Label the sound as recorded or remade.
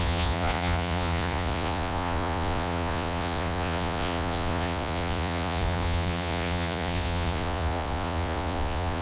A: remade